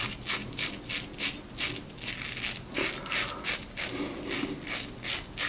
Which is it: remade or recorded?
recorded